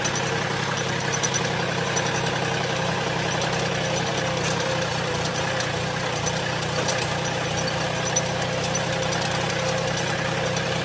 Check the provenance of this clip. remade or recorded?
recorded